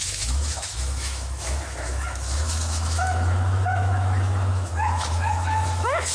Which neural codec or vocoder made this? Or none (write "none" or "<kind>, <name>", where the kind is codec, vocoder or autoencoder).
autoencoder, DAC-VAE